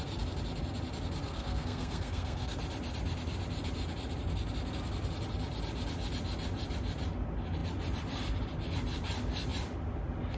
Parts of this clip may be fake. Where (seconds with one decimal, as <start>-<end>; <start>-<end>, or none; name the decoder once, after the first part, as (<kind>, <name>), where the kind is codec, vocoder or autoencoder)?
1.2-2.6 (codec, SNAC)